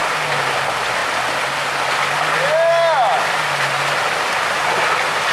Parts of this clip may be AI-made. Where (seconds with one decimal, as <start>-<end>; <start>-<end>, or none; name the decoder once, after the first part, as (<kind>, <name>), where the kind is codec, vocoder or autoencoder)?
none

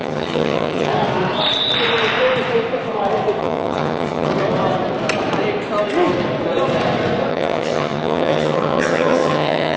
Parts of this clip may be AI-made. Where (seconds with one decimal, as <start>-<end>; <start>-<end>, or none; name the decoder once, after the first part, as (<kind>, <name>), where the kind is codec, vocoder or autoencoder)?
0.0-0.9 (vocoder, HiFi-GAN); 3.4-4.3; 7.3-9.8

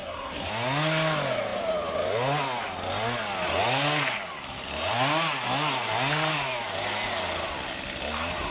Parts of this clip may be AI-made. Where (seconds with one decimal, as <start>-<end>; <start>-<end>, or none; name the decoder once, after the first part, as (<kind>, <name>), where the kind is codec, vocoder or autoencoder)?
0.0-0.5 (codec, SNAC)